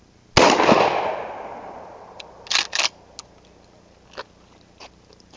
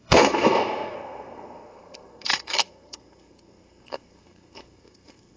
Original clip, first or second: first